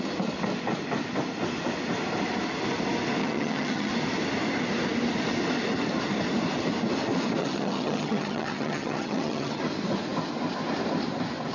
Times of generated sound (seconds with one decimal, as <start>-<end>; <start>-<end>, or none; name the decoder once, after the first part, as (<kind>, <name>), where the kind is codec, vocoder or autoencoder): 3.2-3.9 (vocoder, HiFi-GAN); 7.4-9.6